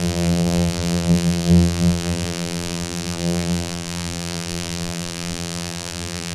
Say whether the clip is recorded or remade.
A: remade